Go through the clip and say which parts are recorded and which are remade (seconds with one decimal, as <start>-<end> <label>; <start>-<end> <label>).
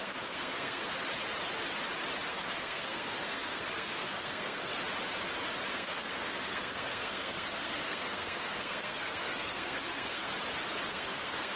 0.0-0.8 remade; 0.8-2.3 recorded; 2.3-4.7 remade; 4.7-5.7 recorded; 5.7-10.3 remade; 10.3-10.9 recorded; 10.9-11.6 remade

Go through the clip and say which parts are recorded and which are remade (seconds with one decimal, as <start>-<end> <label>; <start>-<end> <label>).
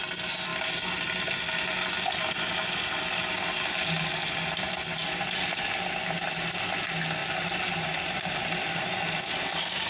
0.0-9.9 recorded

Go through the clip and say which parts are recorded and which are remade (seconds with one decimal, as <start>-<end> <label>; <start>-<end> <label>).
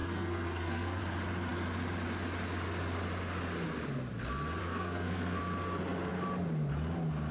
0.0-1.0 remade; 1.0-4.6 recorded; 4.6-5.4 remade; 5.4-7.3 recorded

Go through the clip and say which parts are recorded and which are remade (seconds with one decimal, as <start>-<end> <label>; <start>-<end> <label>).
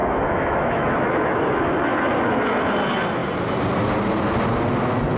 0.0-1.4 remade; 1.4-5.2 recorded